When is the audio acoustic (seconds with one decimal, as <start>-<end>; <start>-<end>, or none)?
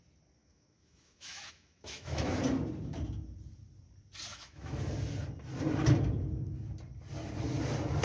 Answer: 0.0-0.4; 2.3-4.3; 4.8-8.0